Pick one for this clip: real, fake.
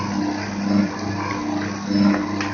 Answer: real